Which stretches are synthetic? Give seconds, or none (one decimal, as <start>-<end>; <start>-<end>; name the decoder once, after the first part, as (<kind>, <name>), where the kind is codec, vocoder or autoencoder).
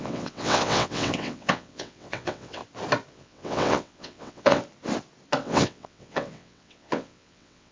0.0-2.6 (vocoder, WaveNeXt); 3.1-4.6; 5.4-7.7